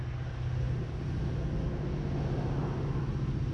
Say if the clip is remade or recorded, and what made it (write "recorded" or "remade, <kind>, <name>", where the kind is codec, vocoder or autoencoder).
recorded